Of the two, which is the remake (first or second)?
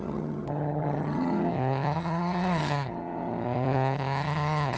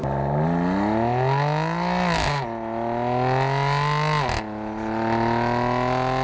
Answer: first